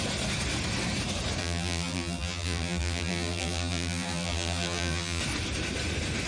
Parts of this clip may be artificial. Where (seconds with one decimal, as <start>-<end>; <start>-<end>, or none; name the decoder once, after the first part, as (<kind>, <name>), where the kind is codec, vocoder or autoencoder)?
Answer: 1.4-5.2 (vocoder, BigVGAN v2)